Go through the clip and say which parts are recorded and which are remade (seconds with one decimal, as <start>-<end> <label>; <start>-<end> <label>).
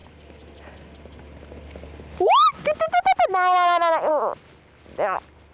0.0-5.5 recorded